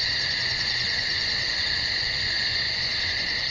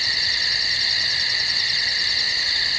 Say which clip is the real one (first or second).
second